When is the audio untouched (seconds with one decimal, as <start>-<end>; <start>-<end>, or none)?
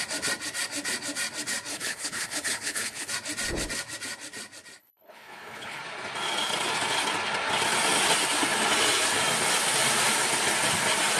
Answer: 0.0-1.7; 3.1-4.8; 5.8-11.2